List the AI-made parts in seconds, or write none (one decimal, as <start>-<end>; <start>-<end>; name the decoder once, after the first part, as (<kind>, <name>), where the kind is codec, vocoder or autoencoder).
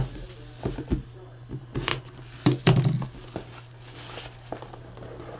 none